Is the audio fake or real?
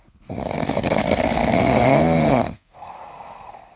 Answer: fake